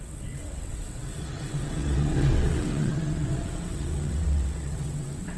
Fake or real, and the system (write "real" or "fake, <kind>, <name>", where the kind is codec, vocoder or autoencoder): fake, vocoder, WaveNeXt